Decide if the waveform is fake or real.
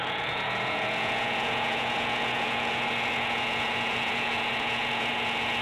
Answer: fake